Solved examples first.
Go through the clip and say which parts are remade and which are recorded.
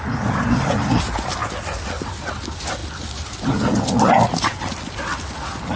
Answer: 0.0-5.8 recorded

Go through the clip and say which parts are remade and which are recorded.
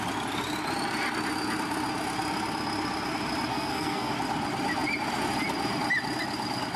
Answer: 0.0-3.5 recorded; 3.5-4.1 remade; 4.1-6.8 recorded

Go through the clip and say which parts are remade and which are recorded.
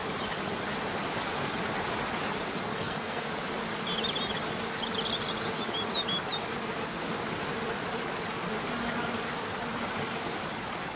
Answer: 0.0-2.7 recorded; 2.7-3.3 remade; 3.3-11.0 recorded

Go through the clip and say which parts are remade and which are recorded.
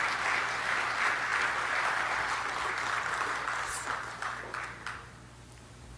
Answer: 0.0-6.0 recorded